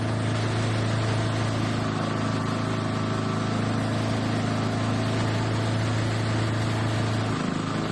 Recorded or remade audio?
recorded